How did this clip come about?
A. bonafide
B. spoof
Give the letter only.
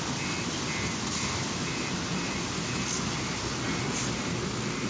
A